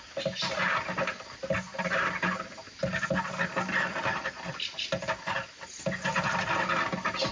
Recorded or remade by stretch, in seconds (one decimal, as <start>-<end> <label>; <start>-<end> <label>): 0.0-7.3 recorded

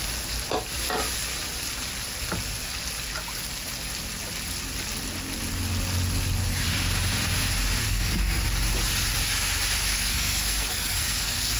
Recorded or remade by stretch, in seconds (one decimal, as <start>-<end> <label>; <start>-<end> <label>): 0.0-7.8 recorded; 7.8-8.4 remade; 8.4-9.9 recorded; 9.9-11.6 remade

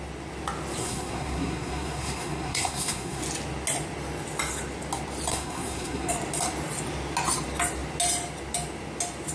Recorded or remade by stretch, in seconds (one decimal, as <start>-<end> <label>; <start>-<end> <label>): 0.0-0.8 recorded; 0.8-3.2 remade; 3.2-5.3 recorded; 5.3-6.1 remade; 6.1-9.3 recorded

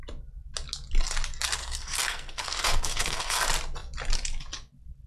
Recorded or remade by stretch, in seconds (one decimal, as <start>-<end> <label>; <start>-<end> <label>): 0.0-1.6 recorded; 1.6-3.4 remade; 3.4-5.1 recorded

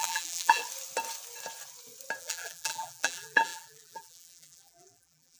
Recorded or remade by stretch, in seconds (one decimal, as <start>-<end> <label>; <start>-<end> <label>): 0.0-0.6 remade; 0.6-2.2 recorded; 2.2-5.4 remade

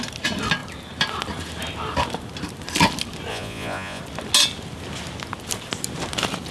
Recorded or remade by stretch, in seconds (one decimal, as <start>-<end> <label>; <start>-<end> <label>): 0.0-3.3 recorded; 3.3-4.0 remade; 4.0-6.5 recorded

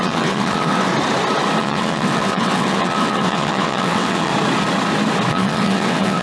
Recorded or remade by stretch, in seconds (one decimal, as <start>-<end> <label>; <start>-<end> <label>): 0.0-0.9 remade; 0.9-1.6 recorded; 1.6-4.3 remade; 4.3-5.3 recorded; 5.3-6.2 remade

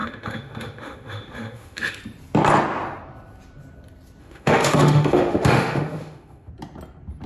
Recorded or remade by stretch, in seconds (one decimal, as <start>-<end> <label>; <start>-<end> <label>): 0.0-2.0 remade; 2.0-4.2 recorded; 4.2-6.5 remade; 6.5-7.3 recorded